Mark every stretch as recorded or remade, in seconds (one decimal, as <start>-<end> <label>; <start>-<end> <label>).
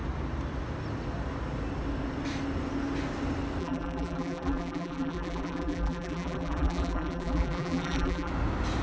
0.0-3.6 recorded; 3.6-8.3 remade; 8.3-8.8 recorded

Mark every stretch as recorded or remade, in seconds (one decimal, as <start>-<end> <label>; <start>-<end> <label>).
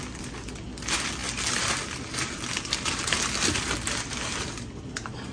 0.0-5.3 recorded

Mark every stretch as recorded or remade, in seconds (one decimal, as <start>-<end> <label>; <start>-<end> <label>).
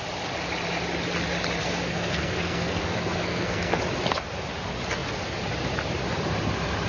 0.0-1.6 recorded; 1.6-3.8 remade; 3.8-6.9 recorded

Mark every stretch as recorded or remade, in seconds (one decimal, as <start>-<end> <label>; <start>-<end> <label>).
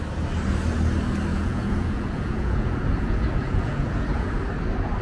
0.0-1.3 recorded; 1.3-4.3 remade; 4.3-5.0 recorded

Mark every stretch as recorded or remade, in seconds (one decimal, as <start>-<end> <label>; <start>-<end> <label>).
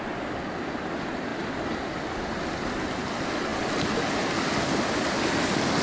0.0-5.8 recorded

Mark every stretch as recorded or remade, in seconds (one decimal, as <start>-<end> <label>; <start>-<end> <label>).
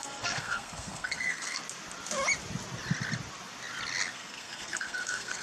0.0-1.6 remade; 1.6-4.0 recorded; 4.0-5.4 remade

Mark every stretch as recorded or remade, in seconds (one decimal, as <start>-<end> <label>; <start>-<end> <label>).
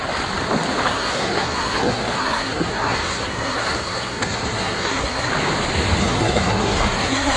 0.0-0.9 recorded; 0.9-5.3 remade; 5.3-6.0 recorded; 6.0-7.4 remade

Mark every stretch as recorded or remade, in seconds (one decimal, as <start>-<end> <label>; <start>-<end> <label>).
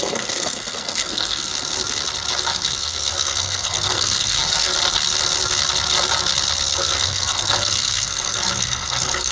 0.0-1.5 remade; 1.5-2.3 recorded; 2.3-4.7 remade; 4.7-6.8 recorded; 6.8-9.3 remade